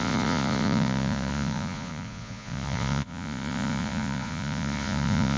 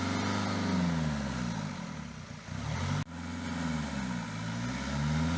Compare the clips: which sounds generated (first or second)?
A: first